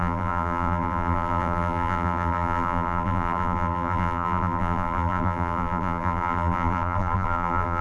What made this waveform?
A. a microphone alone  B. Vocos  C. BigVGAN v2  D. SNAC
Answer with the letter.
C